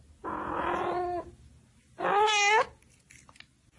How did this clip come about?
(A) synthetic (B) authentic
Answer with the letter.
B